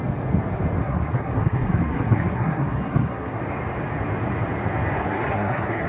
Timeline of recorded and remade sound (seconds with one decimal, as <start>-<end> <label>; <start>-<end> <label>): 0.0-0.8 recorded; 0.8-3.4 remade; 3.4-5.0 recorded; 5.0-5.9 remade